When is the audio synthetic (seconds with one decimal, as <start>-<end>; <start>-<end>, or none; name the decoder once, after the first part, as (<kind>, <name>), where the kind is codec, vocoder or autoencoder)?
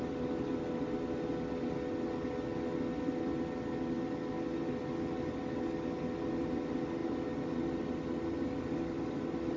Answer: none